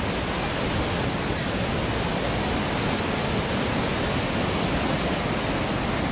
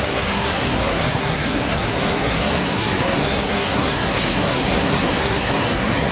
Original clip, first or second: first